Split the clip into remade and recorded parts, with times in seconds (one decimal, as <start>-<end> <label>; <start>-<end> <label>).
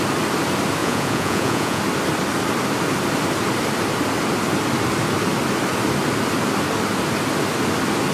0.0-0.8 recorded; 0.8-1.8 remade; 1.8-8.1 recorded